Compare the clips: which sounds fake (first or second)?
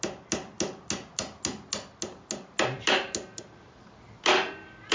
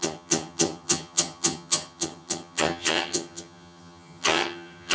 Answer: second